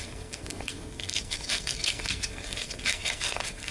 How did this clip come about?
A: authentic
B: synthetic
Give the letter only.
B